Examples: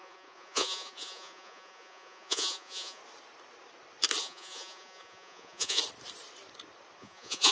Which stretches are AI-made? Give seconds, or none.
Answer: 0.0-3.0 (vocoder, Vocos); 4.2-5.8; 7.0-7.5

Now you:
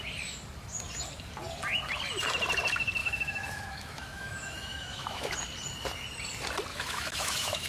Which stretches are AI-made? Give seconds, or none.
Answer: 3.0-5.3 (autoencoder, DAC-VAE); 6.7-7.7

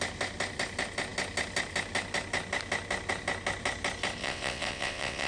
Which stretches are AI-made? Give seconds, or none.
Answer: 4.2-5.3 (vocoder, WaveNeXt)

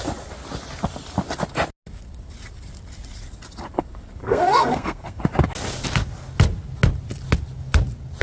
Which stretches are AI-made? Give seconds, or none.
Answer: 4.2-5.2 (codec, SNAC)

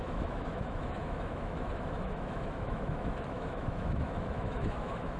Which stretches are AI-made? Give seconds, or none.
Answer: 0.0-5.2 (autoencoder, DAC-VAE)

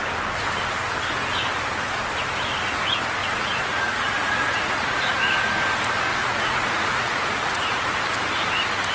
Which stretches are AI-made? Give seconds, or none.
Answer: 3.2-5.6 (vocoder, Vocos); 6.2-8.0

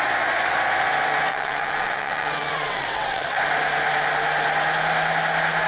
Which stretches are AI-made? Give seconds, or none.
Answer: 1.3-3.4 (vocoder, WaveNeXt)